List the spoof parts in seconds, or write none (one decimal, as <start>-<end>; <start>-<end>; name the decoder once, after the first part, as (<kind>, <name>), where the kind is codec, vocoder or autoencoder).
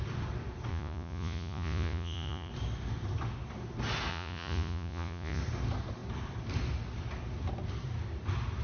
0.7-2.5 (vocoder, Vocos); 4.1-5.4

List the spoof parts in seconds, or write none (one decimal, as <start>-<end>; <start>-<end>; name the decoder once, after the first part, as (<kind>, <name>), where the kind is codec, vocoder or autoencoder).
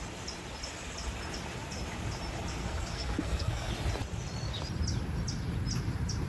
2.6-3.7 (codec, SNAC)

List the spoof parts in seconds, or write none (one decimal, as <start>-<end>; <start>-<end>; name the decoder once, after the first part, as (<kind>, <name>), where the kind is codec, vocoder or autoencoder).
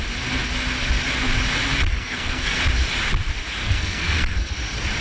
1.9-2.6 (codec, SNAC); 3.6-4.5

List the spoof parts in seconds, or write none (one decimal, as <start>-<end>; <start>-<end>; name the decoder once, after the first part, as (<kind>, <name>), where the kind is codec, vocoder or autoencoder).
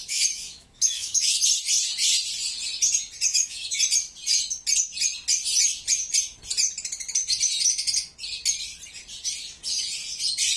0.0-1.4 (autoencoder, DAC-VAE); 3.3-3.8